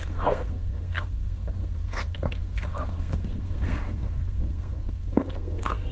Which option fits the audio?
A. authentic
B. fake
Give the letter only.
B